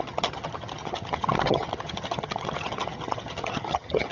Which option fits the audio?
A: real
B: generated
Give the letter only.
B